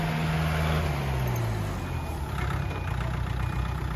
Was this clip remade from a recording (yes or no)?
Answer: no